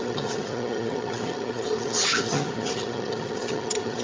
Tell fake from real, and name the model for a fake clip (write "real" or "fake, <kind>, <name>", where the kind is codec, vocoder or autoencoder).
fake, vocoder, HiFi-GAN